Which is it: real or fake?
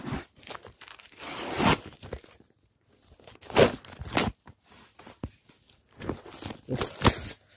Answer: real